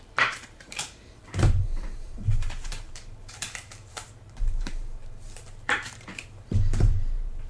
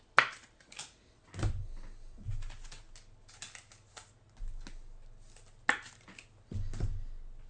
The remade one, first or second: first